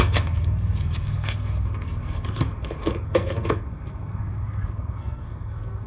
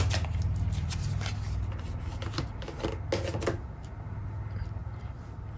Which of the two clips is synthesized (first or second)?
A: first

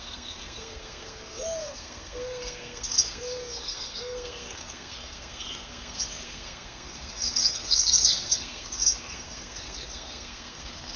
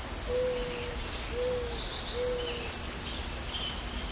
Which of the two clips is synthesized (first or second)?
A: first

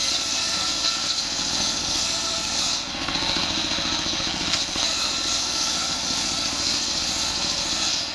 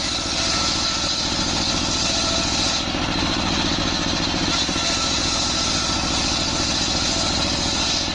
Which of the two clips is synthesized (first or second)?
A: first